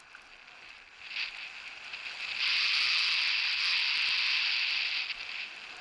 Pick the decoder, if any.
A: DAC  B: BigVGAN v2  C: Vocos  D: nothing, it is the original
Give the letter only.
D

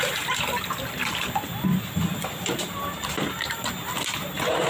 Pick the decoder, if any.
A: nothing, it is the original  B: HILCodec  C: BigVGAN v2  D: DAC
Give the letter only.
A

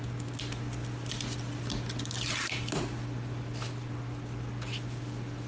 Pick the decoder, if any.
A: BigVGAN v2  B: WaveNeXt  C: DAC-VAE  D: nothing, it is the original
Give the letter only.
D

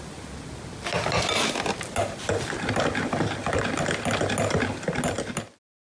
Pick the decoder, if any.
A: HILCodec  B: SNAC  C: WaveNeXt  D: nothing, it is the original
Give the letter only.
D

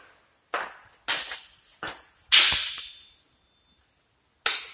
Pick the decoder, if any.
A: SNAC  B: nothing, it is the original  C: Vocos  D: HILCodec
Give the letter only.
B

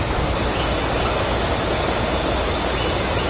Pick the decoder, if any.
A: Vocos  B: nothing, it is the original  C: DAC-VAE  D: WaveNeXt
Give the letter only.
B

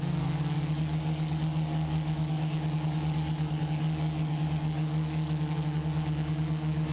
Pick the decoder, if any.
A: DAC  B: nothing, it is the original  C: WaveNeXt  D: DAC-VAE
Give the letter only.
A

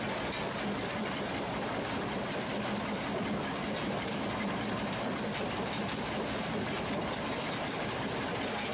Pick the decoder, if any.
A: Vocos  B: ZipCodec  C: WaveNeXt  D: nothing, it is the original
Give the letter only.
D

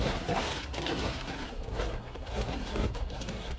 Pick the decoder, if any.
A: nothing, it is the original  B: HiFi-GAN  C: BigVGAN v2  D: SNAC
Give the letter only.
D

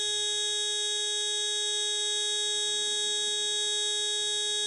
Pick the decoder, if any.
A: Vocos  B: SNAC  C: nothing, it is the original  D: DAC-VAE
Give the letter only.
C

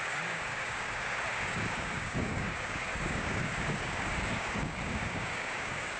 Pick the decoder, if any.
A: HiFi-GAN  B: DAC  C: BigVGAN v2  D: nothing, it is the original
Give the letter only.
B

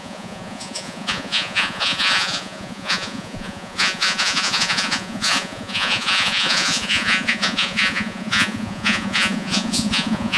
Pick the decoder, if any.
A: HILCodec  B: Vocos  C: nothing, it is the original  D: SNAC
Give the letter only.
B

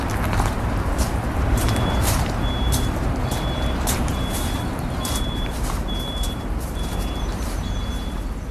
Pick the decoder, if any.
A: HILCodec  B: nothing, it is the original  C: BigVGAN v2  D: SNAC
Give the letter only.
C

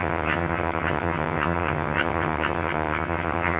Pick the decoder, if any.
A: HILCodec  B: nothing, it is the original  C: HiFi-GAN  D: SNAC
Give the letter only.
C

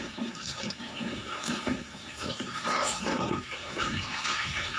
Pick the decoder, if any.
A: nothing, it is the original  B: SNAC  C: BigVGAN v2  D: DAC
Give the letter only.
B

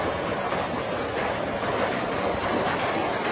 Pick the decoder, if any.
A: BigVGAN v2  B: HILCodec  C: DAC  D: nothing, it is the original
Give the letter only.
A